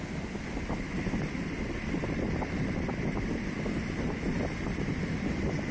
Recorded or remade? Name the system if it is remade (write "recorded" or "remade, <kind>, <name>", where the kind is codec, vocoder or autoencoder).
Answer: recorded